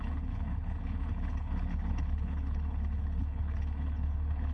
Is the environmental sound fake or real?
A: fake